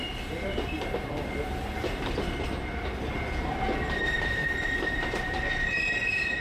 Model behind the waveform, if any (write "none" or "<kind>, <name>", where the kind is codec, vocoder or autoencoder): vocoder, BigVGAN v2